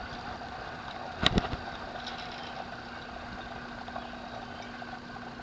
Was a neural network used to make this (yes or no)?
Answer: no